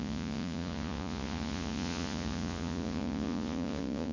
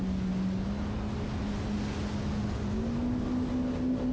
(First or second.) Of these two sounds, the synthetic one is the first